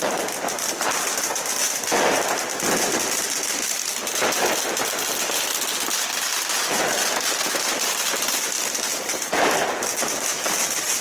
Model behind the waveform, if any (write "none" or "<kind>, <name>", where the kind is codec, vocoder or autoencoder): none